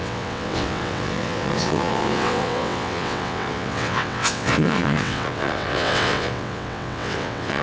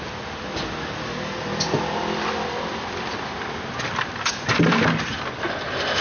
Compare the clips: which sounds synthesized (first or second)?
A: first